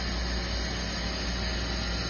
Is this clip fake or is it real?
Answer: real